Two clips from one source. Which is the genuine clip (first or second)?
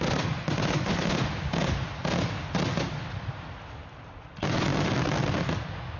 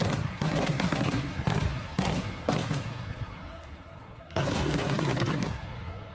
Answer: first